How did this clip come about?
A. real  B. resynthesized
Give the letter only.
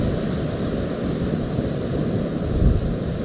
A